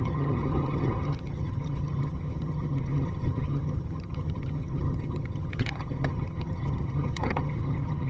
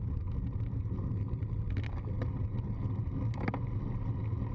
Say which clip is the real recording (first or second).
second